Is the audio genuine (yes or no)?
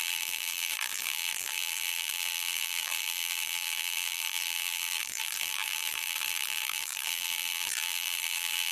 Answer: no